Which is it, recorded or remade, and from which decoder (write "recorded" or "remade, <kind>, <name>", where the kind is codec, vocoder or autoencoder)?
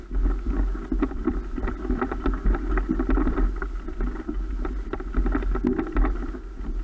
recorded